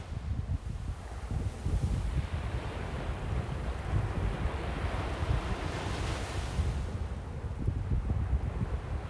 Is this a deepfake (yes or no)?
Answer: no